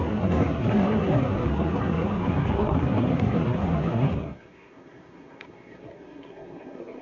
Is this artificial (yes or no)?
yes